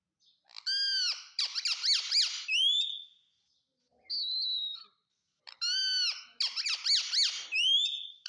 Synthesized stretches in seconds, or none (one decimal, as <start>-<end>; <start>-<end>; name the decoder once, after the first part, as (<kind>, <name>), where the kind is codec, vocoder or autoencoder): none